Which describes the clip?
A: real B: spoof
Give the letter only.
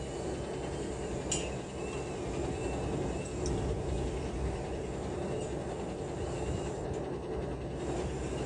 A